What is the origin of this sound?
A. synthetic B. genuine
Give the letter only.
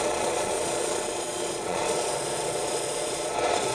A